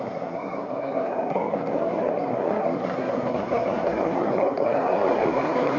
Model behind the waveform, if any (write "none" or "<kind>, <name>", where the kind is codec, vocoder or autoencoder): codec, SNAC